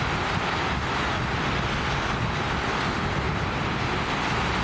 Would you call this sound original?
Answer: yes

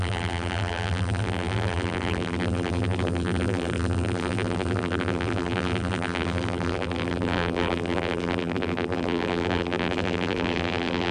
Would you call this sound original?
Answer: no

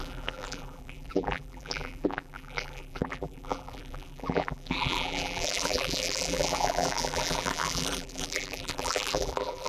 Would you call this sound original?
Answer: no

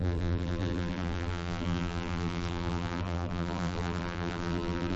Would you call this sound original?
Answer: no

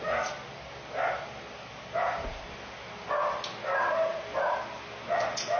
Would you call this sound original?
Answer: yes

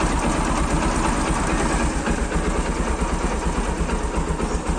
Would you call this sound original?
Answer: yes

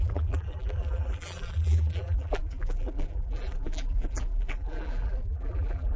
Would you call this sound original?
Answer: no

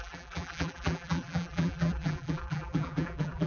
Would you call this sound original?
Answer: no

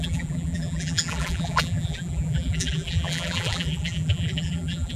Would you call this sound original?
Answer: no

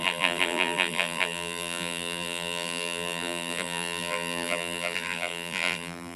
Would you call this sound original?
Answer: no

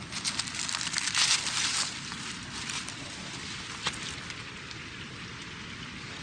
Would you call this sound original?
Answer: yes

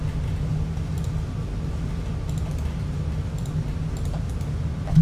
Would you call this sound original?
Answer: yes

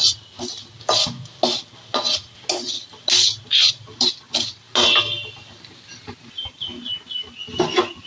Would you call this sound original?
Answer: yes